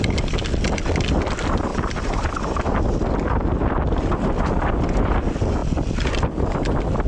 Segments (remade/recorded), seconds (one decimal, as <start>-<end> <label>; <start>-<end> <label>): 0.0-1.7 recorded; 1.7-2.3 remade; 2.3-7.1 recorded